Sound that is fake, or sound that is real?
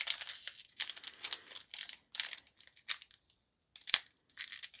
real